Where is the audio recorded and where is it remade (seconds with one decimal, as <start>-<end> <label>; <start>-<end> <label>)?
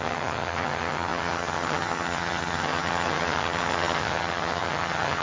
0.0-5.2 remade